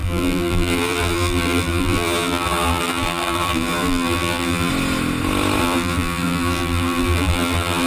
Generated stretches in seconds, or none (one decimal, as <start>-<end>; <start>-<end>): 0.0-4.7; 5.6-7.9